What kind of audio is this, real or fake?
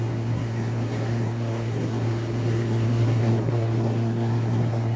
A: fake